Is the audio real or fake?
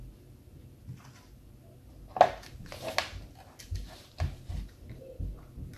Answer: real